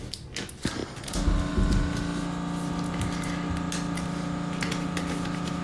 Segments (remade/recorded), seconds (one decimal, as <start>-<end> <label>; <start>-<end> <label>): 0.0-5.6 recorded